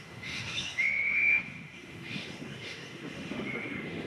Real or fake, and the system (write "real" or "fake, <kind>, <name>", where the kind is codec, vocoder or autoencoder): fake, autoencoder, DAC-VAE